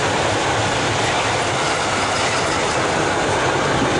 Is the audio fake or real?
real